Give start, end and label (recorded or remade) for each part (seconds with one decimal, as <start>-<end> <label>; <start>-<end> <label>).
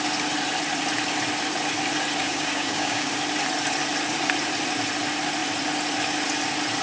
0.0-2.2 recorded; 2.2-3.1 remade; 3.1-6.8 recorded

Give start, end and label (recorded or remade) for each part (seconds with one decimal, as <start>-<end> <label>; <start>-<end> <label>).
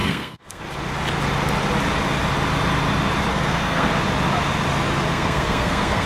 0.0-0.6 remade; 0.6-3.3 recorded; 3.3-3.9 remade; 3.9-5.1 recorded; 5.1-6.1 remade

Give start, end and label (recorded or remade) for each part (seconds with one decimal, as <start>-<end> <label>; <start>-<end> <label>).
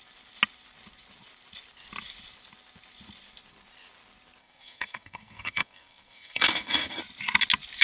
0.0-4.4 recorded; 4.4-7.0 remade; 7.0-7.8 recorded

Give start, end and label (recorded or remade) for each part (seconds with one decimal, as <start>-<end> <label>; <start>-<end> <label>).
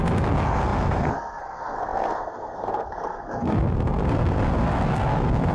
0.0-5.5 remade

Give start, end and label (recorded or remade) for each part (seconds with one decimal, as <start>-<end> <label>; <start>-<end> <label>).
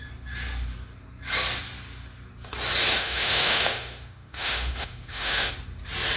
0.0-2.9 recorded; 2.9-5.5 remade; 5.5-6.2 recorded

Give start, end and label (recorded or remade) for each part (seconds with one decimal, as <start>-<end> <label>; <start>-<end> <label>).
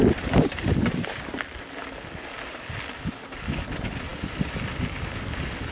0.0-5.7 recorded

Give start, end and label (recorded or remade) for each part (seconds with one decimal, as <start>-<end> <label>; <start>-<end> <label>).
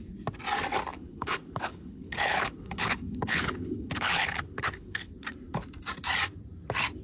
0.0-0.9 recorded; 0.9-5.1 remade; 5.1-7.0 recorded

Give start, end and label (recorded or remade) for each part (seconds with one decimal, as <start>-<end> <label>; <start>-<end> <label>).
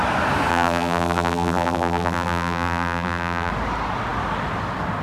0.0-0.5 recorded; 0.5-3.5 remade; 3.5-5.0 recorded